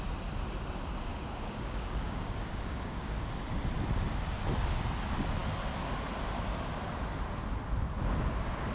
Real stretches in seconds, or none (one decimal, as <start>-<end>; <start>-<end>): 0.0-1.1; 3.3-8.7